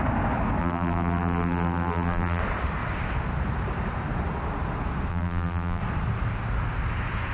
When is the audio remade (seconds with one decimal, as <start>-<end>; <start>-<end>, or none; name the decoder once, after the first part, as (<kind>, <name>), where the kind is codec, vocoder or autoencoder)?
0.6-2.4 (vocoder, BigVGAN v2); 5.1-5.8